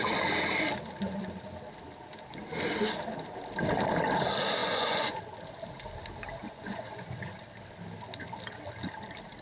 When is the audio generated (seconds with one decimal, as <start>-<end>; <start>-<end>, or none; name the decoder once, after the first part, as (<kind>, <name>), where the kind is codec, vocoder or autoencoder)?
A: 4.6-5.2 (vocoder, Vocos); 6.4-7.4